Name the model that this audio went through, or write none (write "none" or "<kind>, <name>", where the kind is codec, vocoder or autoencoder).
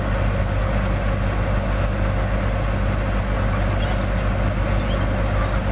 none